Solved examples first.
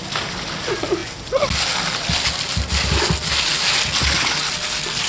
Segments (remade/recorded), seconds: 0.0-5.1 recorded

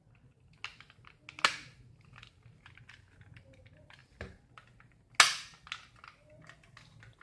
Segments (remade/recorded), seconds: 0.0-7.2 recorded